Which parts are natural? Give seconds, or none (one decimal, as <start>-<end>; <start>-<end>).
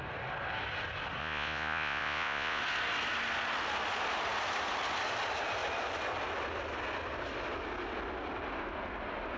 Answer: 0.0-1.2; 2.6-9.4